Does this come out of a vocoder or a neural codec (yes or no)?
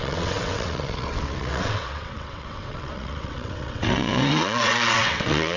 yes